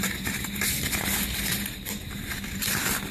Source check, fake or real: real